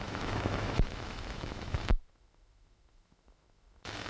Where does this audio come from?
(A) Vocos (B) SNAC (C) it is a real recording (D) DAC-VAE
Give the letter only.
D